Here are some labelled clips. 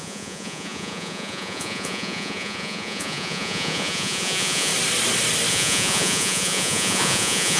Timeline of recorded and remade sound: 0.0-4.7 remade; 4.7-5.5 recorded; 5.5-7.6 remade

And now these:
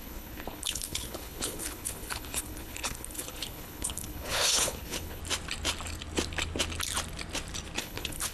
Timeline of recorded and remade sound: 0.0-5.2 remade; 5.2-7.8 recorded; 7.8-8.3 remade

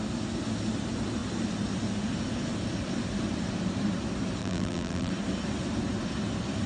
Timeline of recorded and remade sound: 0.0-4.4 recorded; 4.4-5.1 remade; 5.1-6.7 recorded

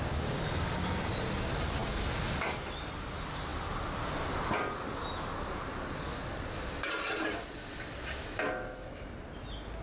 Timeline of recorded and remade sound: 0.0-9.8 recorded